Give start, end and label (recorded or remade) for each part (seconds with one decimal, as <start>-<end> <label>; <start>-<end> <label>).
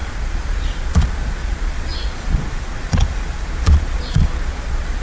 0.0-5.0 remade